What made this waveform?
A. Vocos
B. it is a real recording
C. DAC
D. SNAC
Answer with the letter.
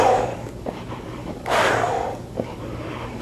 C